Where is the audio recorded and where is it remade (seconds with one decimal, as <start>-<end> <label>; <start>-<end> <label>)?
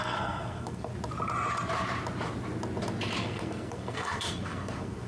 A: 0.0-0.9 remade; 0.9-3.2 recorded; 3.2-5.1 remade